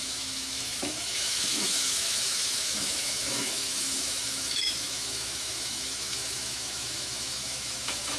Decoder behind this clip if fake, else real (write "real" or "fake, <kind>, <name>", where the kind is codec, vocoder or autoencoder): fake, autoencoder, DAC-VAE